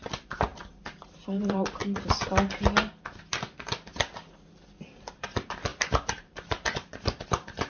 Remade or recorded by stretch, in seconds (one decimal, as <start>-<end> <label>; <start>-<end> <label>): 0.0-1.8 remade; 1.8-5.1 recorded; 5.1-7.7 remade